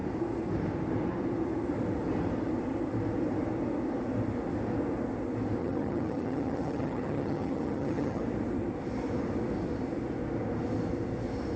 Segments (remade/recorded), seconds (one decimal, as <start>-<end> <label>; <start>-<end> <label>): 0.0-5.6 recorded; 5.6-8.2 remade; 8.2-11.6 recorded